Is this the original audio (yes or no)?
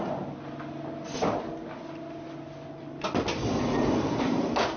yes